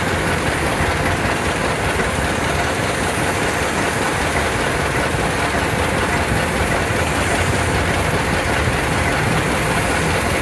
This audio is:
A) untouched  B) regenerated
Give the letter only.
A